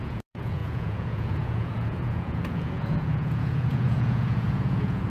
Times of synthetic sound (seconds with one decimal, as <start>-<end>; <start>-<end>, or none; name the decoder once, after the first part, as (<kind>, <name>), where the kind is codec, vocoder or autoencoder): 0.0-5.1 (vocoder, Vocos)